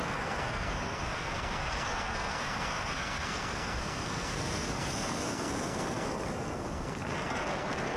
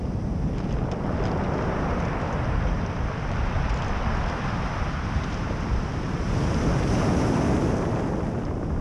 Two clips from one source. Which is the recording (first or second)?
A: second